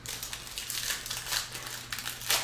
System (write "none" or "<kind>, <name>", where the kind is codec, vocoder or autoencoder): none